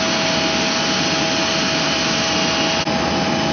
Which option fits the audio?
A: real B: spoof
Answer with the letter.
A